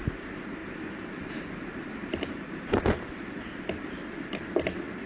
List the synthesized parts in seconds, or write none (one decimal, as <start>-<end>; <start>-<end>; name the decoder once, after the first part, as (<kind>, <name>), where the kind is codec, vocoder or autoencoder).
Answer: 0.6-2.5 (vocoder, BigVGAN v2)